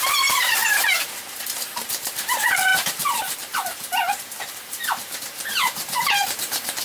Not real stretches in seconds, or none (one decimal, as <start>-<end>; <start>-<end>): 0.0-6.8